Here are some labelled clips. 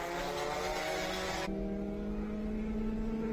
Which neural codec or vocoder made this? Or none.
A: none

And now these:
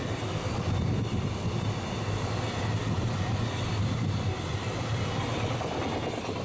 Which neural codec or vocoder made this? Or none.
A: none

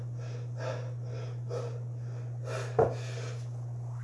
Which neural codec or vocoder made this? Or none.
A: none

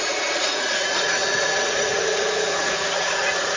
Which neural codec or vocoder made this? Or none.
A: vocoder, Vocos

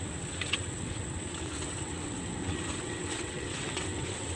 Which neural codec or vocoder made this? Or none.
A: vocoder, WaveNeXt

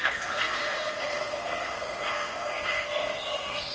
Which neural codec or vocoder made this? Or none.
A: codec, SNAC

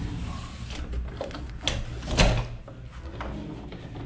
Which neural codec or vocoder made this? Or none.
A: none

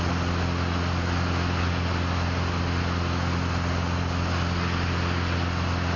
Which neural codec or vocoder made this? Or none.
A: none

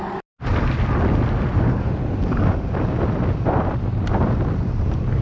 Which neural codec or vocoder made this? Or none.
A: none